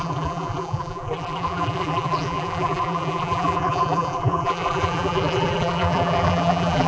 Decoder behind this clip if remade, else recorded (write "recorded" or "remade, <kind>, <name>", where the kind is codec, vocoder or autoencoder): remade, vocoder, BigVGAN v2